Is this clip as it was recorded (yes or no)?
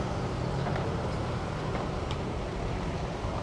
no